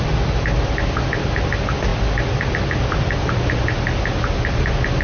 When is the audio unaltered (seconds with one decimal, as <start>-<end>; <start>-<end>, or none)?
0.0-5.0